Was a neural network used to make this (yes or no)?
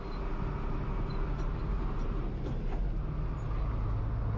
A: no